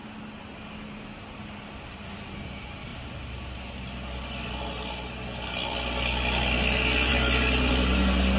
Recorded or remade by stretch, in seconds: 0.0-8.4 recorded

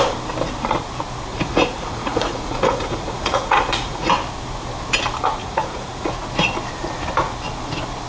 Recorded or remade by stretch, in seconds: 0.0-1.3 recorded; 1.3-4.1 remade; 4.1-5.4 recorded; 5.4-6.1 remade; 6.1-8.1 recorded

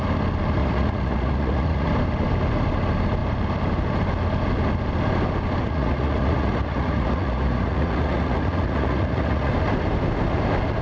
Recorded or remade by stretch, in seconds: 0.0-0.6 recorded; 0.6-1.9 remade; 1.9-5.6 recorded; 5.6-9.5 remade; 9.5-10.8 recorded

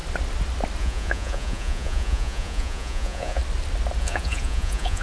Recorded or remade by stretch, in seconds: 0.0-0.8 recorded; 0.8-3.4 remade; 3.4-4.0 recorded; 4.0-5.0 remade